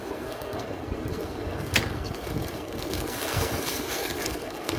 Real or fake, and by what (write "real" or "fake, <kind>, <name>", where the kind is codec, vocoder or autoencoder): fake, codec, SNAC